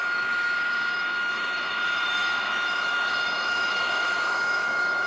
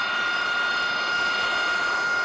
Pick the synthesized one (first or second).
first